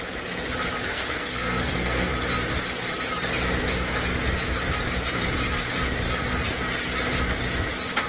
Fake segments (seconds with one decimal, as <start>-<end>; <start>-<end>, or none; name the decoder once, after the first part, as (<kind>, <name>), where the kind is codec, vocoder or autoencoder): 0.9-2.1 (codec, SNAC)